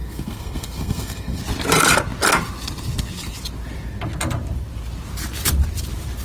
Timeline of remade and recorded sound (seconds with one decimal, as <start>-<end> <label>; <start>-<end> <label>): 0.0-1.4 remade; 1.4-6.2 recorded